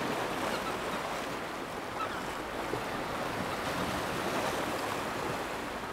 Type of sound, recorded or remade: recorded